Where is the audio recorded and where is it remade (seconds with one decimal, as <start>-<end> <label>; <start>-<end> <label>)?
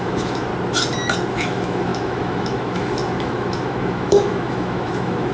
0.0-0.5 remade; 0.5-1.3 recorded; 1.3-5.3 remade